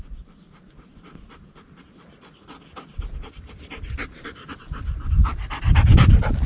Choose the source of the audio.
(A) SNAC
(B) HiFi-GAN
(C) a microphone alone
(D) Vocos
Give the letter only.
C